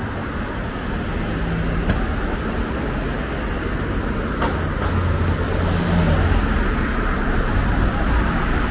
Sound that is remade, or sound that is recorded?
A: recorded